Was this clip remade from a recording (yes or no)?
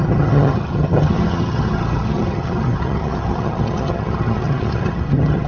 yes